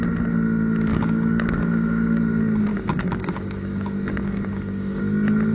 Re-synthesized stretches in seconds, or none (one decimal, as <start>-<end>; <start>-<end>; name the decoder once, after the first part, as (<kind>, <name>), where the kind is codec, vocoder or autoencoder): 0.9-2.2 (codec, DAC); 2.7-5.0